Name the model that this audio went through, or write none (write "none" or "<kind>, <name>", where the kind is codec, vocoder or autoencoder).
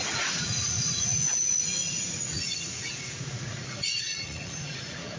vocoder, Vocos